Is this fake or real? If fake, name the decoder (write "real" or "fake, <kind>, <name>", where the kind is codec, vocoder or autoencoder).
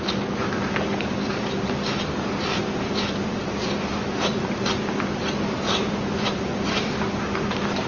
real